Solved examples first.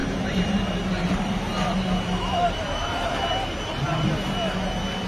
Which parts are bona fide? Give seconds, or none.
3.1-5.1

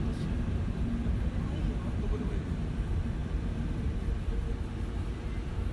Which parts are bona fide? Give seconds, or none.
none

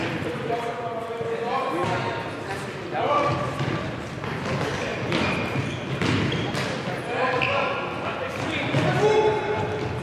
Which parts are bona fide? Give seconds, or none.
0.0-10.0

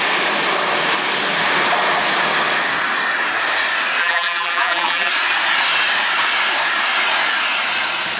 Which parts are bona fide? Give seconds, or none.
0.0-4.0; 5.1-8.2